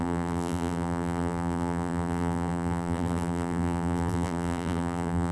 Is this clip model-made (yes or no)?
yes